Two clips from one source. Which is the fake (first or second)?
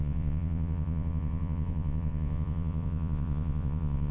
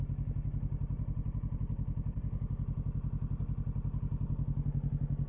first